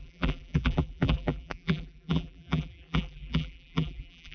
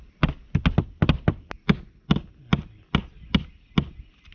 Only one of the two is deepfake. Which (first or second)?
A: first